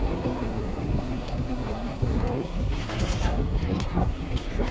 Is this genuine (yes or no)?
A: no